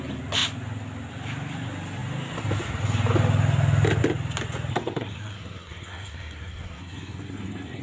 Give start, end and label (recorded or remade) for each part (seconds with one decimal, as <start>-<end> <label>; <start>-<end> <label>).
0.0-4.7 recorded; 4.7-7.8 remade